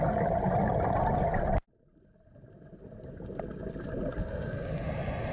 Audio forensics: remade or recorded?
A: recorded